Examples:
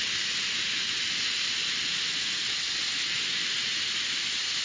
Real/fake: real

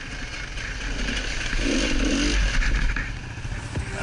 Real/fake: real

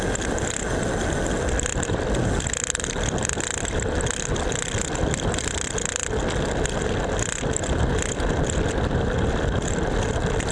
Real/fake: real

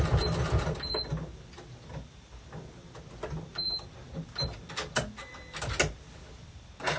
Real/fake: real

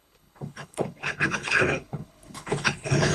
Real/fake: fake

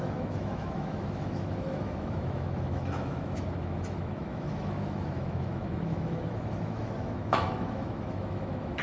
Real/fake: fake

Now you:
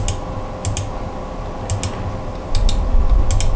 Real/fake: real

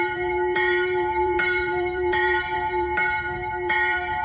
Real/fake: fake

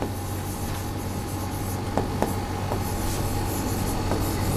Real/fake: real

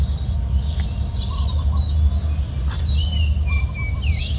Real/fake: real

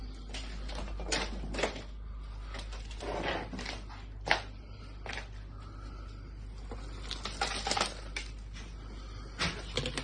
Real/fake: real